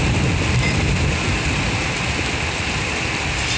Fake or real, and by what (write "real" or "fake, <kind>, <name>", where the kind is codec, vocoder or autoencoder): fake, vocoder, BigVGAN v2